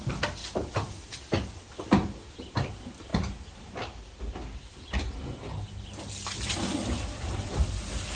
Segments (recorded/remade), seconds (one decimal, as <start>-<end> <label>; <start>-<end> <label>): 0.0-8.2 recorded